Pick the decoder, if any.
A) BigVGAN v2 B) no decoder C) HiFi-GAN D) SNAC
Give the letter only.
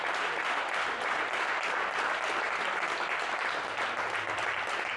B